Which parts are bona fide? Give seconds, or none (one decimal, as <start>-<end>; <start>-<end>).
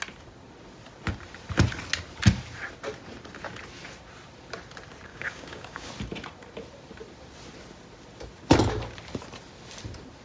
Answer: 0.0-5.1; 5.9-10.2